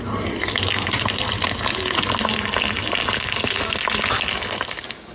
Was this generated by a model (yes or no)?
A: no